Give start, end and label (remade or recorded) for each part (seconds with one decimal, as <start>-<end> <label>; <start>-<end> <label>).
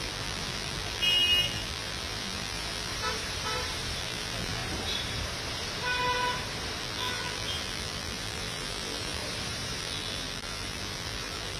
0.0-2.9 remade; 2.9-4.0 recorded; 4.0-4.6 remade; 4.6-6.8 recorded; 6.8-9.2 remade; 9.2-9.8 recorded; 9.8-11.6 remade